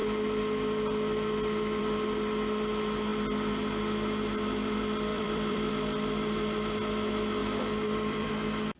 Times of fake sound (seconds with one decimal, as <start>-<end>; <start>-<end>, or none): 5.1-5.7; 7.4-8.3